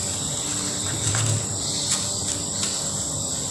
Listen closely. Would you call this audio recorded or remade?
recorded